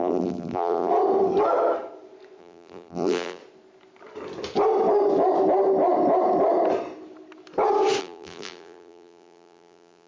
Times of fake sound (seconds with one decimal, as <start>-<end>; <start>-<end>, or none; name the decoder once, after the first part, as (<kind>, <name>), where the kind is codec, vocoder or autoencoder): 0.0-0.9 (vocoder, BigVGAN v2); 2.4-3.4; 8.0-10.1